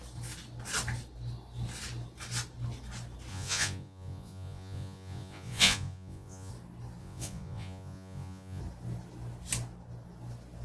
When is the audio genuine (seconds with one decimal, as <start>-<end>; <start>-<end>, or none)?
0.0-3.3; 6.5-7.0; 8.6-10.6